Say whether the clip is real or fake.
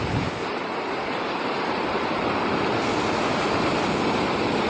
real